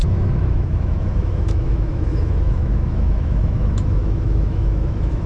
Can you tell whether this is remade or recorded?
remade